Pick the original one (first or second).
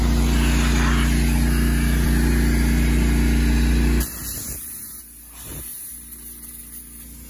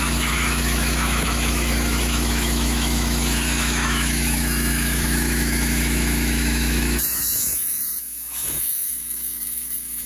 first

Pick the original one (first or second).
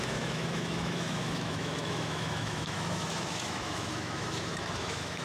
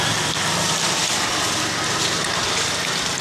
second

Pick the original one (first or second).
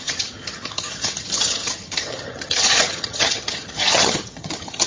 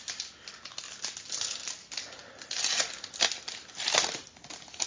second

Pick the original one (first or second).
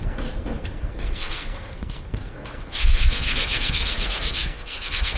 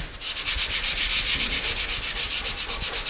second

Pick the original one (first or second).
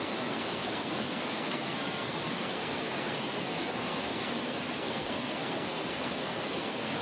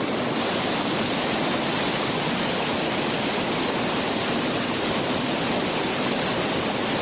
second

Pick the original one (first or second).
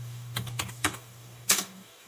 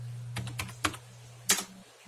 second